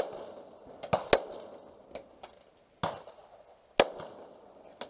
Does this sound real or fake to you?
real